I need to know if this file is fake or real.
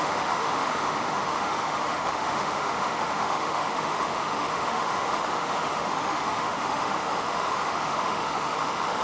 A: fake